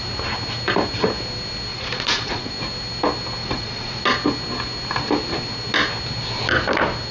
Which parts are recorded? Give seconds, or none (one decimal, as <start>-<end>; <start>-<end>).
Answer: 0.0-1.7; 2.5-3.4; 4.0-7.1